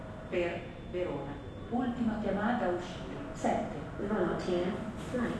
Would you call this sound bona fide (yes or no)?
yes